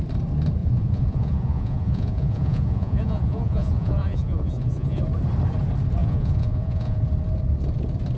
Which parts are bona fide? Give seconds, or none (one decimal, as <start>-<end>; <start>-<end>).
0.0-0.6; 5.0-6.0; 7.0-8.2